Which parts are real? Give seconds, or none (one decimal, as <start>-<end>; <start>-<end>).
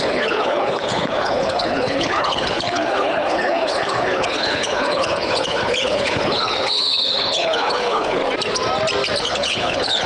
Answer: 8.2-9.2